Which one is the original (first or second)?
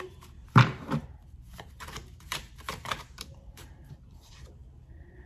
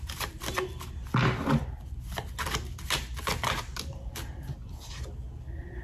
second